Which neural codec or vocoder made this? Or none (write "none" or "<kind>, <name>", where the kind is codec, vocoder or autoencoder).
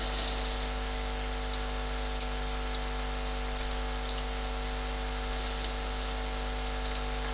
none